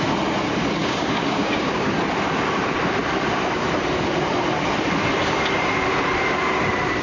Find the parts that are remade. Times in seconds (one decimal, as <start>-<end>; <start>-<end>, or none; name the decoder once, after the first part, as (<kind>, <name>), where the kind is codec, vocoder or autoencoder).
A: 0.8-1.9 (codec, DAC)